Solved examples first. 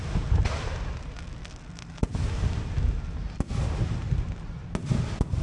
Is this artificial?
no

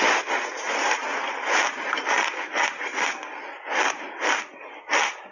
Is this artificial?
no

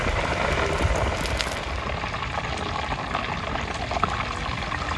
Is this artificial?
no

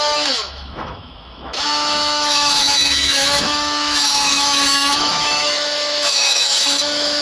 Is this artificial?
yes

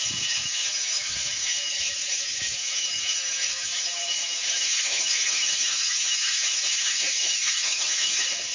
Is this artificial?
yes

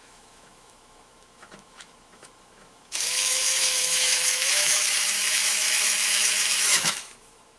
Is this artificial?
yes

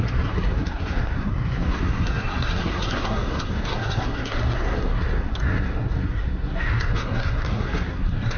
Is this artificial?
yes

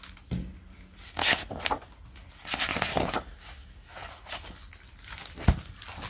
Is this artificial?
no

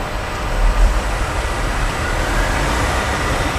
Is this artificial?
yes